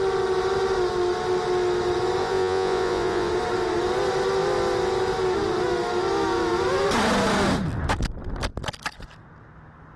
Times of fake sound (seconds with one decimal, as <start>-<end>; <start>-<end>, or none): 2.2-3.3